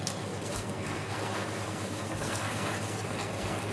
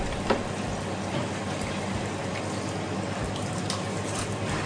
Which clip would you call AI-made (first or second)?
first